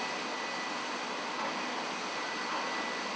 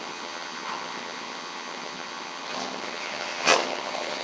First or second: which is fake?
second